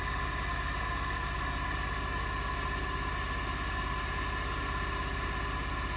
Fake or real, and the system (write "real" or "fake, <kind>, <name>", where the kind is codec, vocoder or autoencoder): real